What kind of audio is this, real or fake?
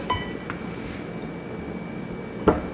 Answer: real